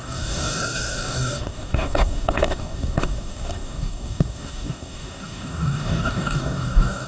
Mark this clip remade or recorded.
remade